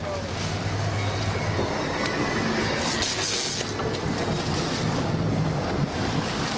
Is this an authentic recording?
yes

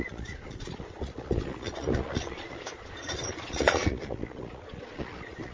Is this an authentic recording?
no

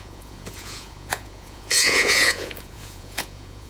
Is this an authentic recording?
no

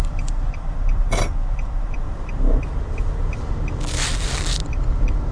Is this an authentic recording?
yes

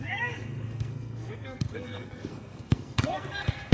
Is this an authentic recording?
no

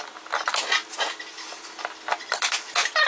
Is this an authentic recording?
yes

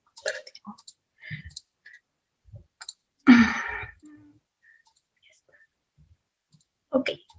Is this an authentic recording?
no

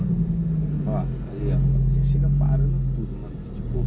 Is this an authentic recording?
yes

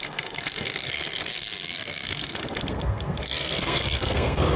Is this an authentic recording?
no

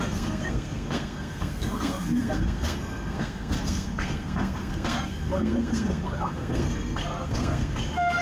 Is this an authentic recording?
no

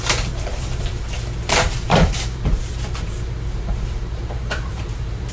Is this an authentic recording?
no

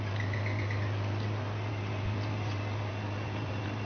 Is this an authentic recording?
yes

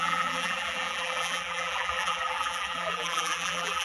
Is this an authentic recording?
no